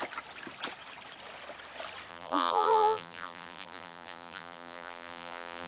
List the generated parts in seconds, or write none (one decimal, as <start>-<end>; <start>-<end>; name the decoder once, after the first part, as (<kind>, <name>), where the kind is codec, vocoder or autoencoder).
2.1-5.7 (vocoder, BigVGAN v2)